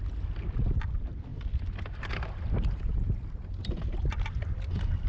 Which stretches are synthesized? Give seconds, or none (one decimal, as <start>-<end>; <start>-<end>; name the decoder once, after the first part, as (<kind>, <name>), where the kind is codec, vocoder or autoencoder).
none